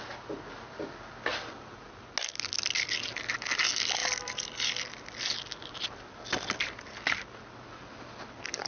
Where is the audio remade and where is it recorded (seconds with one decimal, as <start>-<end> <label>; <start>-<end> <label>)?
0.0-4.0 recorded; 4.0-5.4 remade; 5.4-8.7 recorded